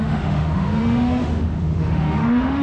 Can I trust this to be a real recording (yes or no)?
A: no